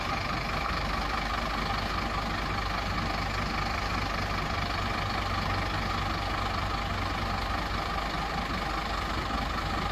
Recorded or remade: recorded